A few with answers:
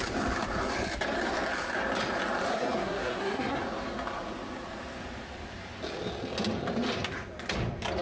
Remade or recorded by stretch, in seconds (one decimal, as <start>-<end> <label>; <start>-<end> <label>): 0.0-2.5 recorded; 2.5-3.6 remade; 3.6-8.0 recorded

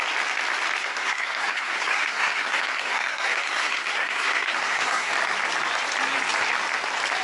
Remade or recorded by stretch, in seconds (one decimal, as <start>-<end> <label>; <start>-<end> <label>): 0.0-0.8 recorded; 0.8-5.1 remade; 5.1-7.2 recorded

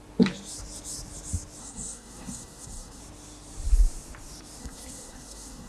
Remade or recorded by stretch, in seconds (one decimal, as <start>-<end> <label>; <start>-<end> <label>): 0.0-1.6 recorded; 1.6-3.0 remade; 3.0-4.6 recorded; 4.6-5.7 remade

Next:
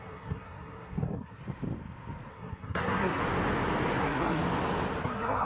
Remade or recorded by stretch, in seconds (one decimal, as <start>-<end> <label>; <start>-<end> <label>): 0.0-1.4 remade; 1.4-2.3 recorded; 2.3-3.2 remade; 3.2-4.0 recorded; 4.0-4.4 remade; 4.4-5.0 recorded; 5.0-5.5 remade

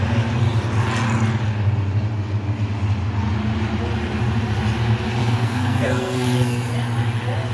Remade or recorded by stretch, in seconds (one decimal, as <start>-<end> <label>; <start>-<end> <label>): 0.0-5.2 recorded; 5.2-6.7 remade; 6.7-7.5 recorded

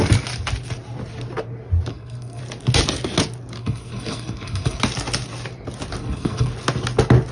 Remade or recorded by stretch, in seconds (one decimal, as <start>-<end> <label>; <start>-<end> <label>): 0.0-1.9 recorded; 1.9-2.4 remade; 2.4-3.6 recorded; 3.6-4.8 remade; 4.8-6.0 recorded; 6.0-6.5 remade; 6.5-7.3 recorded

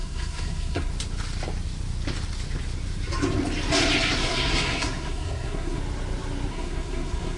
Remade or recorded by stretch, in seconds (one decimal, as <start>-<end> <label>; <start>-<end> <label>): 0.0-0.9 remade; 0.9-4.2 recorded; 4.2-5.8 remade; 5.8-6.5 recorded; 6.5-7.4 remade